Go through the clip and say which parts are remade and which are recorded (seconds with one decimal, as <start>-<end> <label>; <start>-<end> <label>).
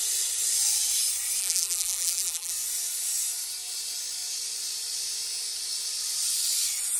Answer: 0.0-1.4 recorded; 1.4-2.5 remade; 2.5-7.0 recorded